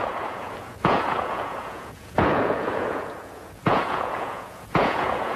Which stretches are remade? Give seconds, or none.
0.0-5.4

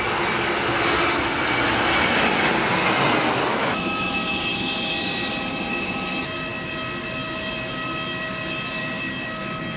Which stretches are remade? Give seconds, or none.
3.5-4.2